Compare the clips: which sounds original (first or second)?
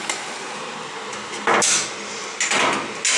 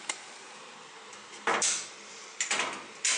first